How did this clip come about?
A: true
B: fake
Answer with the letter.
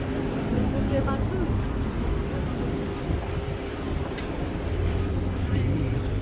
B